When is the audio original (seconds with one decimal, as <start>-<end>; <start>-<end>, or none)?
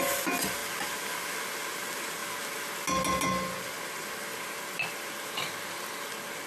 0.0-6.5